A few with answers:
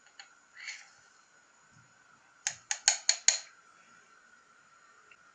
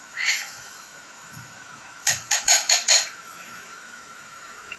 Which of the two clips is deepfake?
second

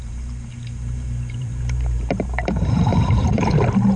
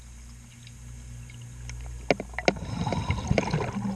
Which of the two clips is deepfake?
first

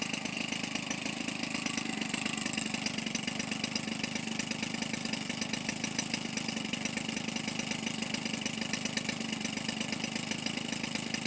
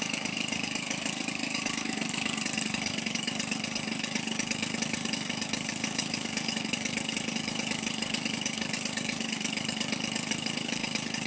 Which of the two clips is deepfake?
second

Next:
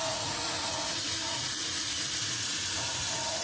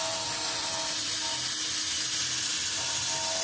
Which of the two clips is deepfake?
first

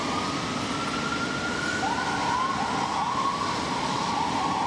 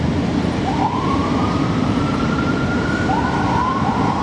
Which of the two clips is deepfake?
second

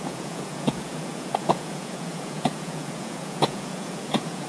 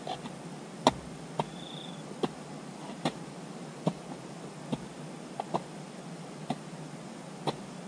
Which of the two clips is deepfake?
first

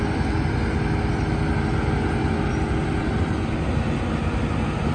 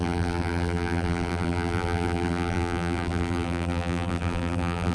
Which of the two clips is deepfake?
second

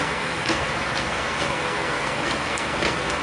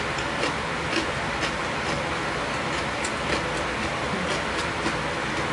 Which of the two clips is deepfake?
first